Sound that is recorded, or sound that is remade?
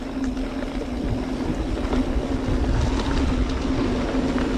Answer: recorded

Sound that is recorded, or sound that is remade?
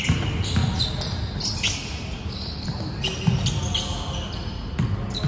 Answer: recorded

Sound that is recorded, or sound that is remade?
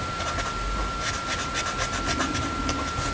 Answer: recorded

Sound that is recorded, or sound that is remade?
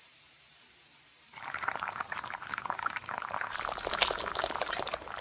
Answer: remade